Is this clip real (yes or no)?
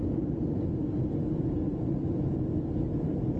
yes